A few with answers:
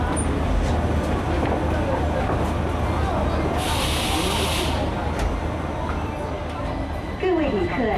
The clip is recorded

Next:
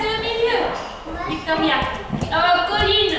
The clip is recorded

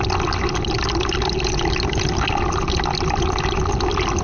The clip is recorded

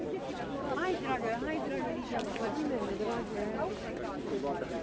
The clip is recorded